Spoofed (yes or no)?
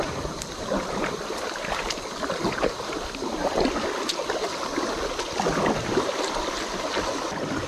no